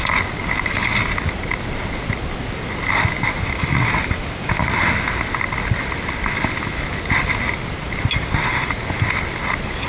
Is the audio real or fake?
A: real